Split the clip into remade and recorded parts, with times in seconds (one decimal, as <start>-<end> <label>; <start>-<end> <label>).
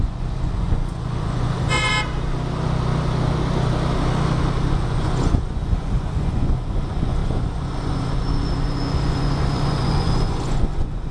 0.0-1.9 remade; 1.9-4.7 recorded; 4.7-11.1 remade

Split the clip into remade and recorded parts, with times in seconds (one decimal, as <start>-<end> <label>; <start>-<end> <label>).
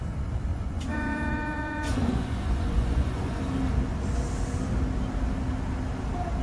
0.0-0.5 recorded; 0.5-3.4 remade; 3.4-6.4 recorded